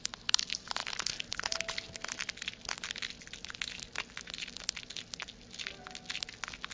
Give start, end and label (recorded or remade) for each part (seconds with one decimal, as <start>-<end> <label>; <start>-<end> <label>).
0.0-6.7 recorded